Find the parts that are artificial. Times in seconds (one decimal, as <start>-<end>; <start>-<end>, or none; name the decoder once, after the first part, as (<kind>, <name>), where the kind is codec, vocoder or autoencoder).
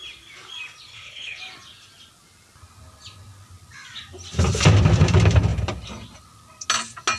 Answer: 0.9-1.4 (codec, HILCodec)